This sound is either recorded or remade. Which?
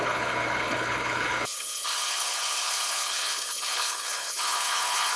remade